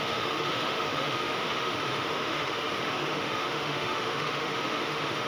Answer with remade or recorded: remade